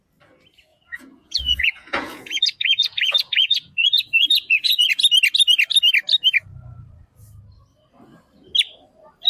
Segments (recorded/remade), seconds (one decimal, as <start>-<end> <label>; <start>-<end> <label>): 0.0-0.7 recorded; 0.7-4.9 remade; 4.9-9.3 recorded